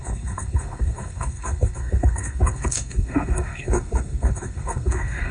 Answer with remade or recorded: remade